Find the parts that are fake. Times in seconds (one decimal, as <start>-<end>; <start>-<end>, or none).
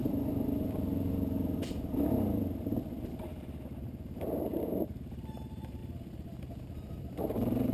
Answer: 4.2-5.8; 6.4-7.7